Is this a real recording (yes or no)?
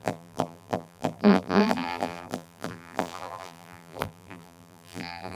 no